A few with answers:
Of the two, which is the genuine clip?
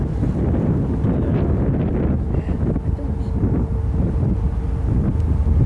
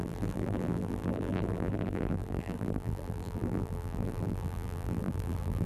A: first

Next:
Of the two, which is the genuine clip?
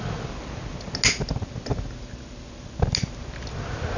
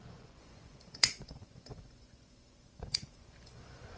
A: first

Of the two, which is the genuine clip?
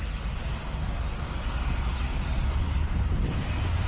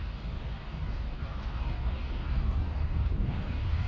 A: first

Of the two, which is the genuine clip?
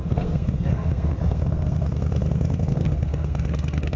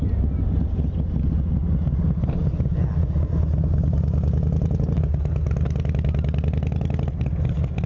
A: second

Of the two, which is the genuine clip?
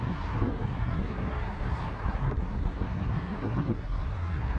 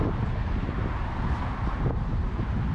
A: second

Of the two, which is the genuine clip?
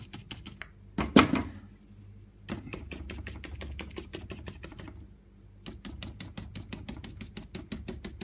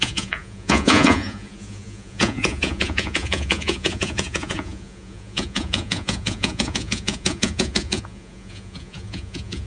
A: first